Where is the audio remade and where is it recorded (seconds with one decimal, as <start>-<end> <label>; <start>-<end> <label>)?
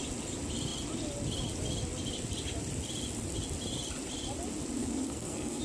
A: 0.0-4.8 recorded; 4.8-5.6 remade